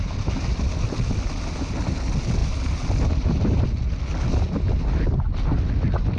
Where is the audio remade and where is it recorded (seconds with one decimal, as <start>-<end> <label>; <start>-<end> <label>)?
0.0-6.2 recorded

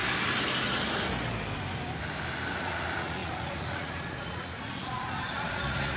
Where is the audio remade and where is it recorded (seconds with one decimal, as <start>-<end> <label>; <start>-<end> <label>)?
0.0-2.6 recorded; 2.6-6.0 remade

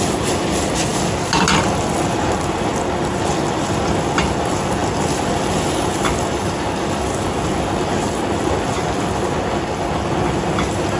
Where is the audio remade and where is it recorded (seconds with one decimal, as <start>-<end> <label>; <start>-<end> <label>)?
0.0-11.0 recorded

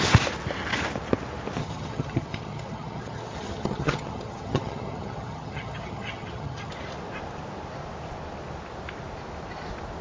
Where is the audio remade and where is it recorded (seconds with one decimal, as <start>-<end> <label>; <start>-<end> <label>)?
0.0-1.6 recorded; 1.6-6.7 remade; 6.7-10.0 recorded

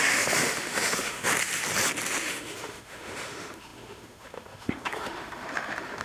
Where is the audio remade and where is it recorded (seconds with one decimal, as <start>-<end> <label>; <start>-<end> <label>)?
0.0-1.3 remade; 1.3-2.2 recorded; 2.2-6.0 remade

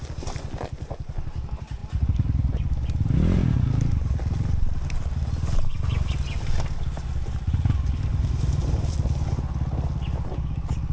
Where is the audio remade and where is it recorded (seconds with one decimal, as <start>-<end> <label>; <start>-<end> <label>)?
0.0-10.9 recorded